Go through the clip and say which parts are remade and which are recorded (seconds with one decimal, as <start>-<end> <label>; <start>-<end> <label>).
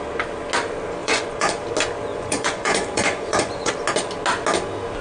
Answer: 0.0-1.0 recorded; 1.0-1.5 remade; 1.5-2.1 recorded; 2.1-3.7 remade; 3.7-5.0 recorded